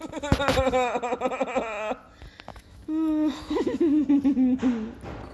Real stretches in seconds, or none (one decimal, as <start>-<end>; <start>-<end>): 0.0-2.5; 4.0-5.3